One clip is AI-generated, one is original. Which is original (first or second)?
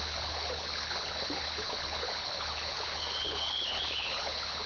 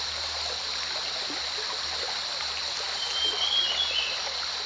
second